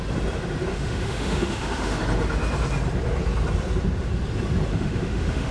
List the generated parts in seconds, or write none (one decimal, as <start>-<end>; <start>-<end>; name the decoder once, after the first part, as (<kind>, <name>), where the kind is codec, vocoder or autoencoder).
0.7-2.0 (autoencoder, DAC-VAE); 4.7-5.5